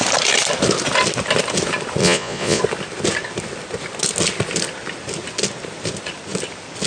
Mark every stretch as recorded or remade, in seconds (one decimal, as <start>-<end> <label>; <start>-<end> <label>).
0.0-2.0 recorded; 2.0-2.6 remade; 2.6-6.9 recorded